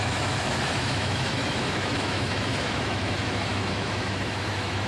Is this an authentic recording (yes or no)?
no